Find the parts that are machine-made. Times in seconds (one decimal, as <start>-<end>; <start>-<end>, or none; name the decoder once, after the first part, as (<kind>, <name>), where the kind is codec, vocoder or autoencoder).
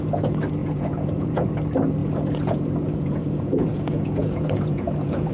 0.6-1.5 (vocoder, Vocos); 2.0-5.3